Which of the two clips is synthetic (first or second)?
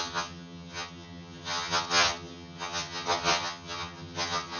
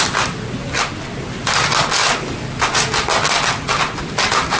first